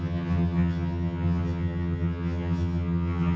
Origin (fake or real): fake